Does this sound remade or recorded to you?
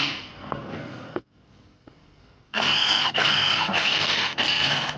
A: remade